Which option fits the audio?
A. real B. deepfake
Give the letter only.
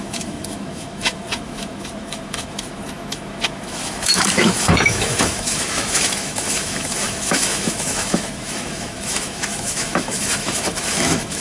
B